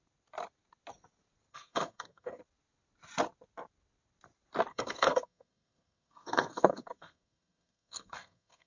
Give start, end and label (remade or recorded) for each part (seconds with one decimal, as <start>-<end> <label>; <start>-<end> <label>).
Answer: 0.0-1.5 recorded; 1.5-2.4 remade; 2.4-4.7 recorded; 4.7-8.7 remade